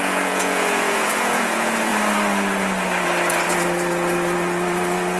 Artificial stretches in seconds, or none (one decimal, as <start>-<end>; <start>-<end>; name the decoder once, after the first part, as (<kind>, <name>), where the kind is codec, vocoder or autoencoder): 0.0-1.9 (vocoder, Vocos)